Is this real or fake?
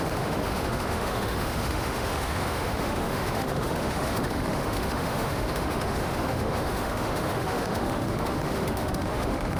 fake